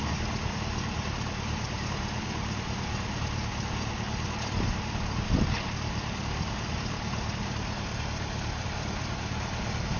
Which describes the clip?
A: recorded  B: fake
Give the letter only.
B